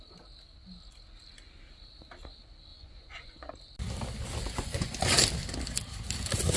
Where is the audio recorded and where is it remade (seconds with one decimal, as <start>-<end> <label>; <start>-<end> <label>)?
0.0-2.7 recorded; 2.7-3.5 remade; 3.5-4.4 recorded; 4.4-4.9 remade; 4.9-6.6 recorded